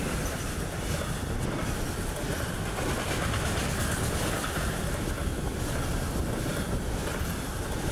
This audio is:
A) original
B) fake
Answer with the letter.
A